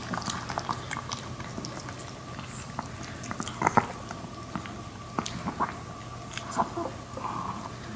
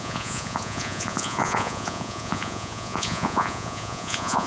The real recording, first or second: first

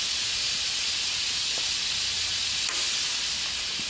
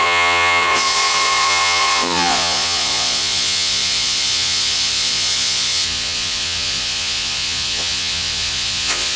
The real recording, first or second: first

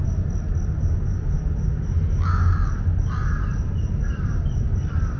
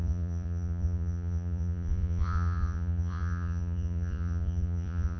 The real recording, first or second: first